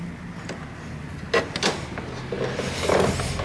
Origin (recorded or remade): recorded